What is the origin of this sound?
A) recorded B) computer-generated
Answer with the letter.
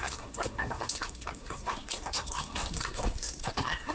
B